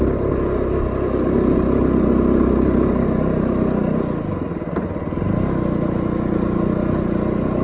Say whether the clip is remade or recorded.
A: recorded